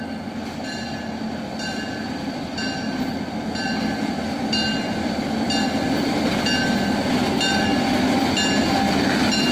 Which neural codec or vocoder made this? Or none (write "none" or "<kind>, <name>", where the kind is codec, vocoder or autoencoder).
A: none